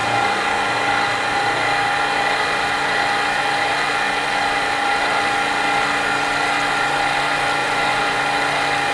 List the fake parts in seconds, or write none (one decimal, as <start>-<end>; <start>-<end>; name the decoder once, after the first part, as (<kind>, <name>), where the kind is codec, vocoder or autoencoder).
7.6-8.2 (vocoder, Vocos)